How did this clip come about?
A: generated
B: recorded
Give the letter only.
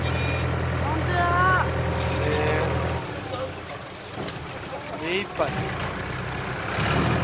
B